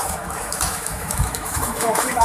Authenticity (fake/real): fake